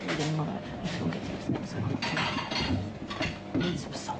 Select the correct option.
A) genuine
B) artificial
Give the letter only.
A